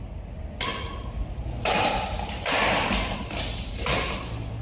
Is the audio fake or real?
real